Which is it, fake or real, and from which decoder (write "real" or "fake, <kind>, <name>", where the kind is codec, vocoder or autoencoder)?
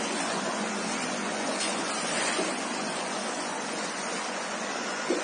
fake, vocoder, Vocos